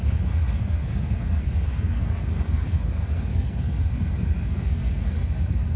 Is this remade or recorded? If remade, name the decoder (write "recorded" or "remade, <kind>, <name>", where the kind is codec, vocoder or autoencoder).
remade, codec, SNAC